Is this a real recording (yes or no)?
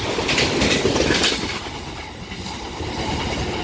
yes